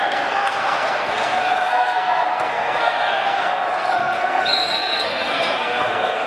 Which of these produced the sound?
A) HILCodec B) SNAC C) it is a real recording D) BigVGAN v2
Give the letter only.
B